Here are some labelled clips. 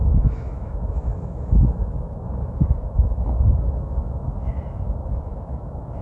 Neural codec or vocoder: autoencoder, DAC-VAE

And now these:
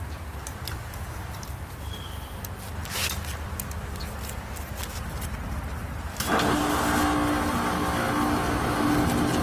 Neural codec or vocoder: none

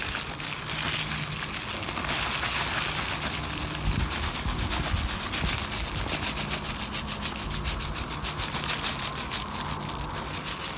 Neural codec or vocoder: none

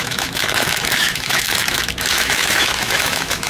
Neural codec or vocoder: autoencoder, DAC-VAE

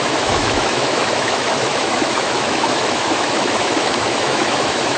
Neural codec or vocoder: autoencoder, DAC-VAE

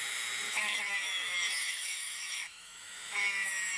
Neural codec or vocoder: autoencoder, DAC-VAE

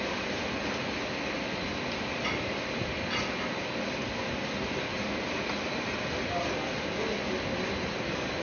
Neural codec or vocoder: none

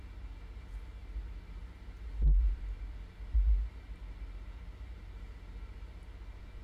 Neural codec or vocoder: none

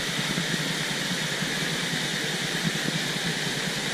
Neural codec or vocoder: none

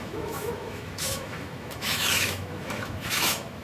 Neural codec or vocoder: autoencoder, DAC-VAE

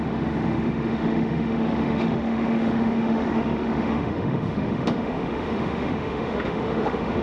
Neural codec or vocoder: autoencoder, DAC-VAE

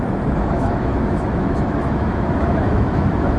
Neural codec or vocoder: autoencoder, DAC-VAE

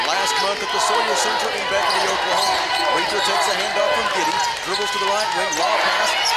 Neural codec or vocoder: none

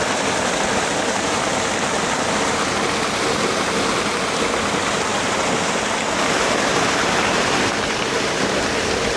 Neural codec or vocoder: none